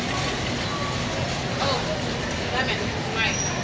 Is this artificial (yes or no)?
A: no